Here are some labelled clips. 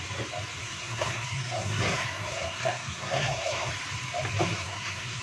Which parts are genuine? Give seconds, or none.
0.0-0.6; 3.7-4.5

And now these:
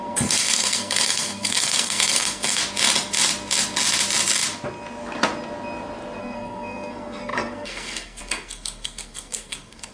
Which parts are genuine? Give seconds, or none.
2.6-6.2

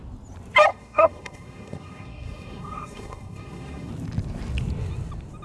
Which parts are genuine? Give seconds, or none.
0.0-0.7; 3.9-5.4